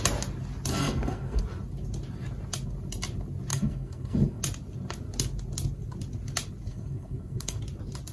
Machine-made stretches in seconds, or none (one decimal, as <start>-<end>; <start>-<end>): 0.7-1.4; 3.5-4.4; 6.7-7.6